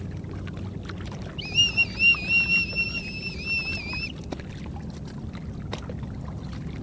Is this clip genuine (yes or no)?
yes